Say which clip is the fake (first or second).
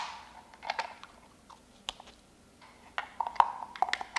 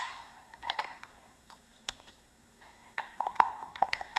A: second